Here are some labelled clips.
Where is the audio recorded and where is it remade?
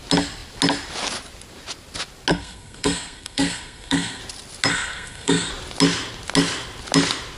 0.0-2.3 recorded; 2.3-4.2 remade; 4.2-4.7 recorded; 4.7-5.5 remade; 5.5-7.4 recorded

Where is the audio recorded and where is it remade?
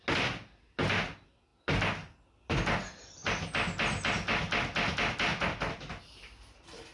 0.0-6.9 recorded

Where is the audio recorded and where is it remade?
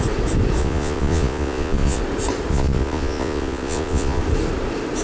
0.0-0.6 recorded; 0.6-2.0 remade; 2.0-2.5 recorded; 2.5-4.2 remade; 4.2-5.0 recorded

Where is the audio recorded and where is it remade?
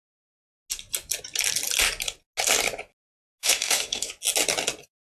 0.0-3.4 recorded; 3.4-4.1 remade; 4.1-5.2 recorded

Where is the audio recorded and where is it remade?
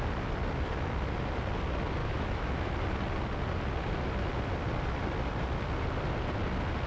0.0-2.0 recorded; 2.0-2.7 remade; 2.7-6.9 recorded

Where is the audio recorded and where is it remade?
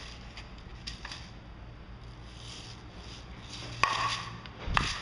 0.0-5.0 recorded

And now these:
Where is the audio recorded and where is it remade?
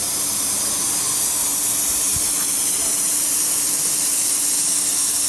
0.0-0.7 remade; 0.7-1.5 recorded; 1.5-4.4 remade; 4.4-5.3 recorded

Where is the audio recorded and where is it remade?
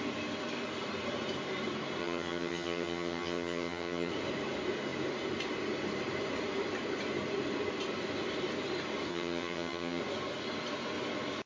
0.0-2.0 recorded; 2.0-4.1 remade; 4.1-9.1 recorded; 9.1-10.0 remade; 10.0-11.5 recorded